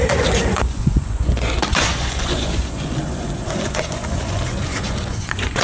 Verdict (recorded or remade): remade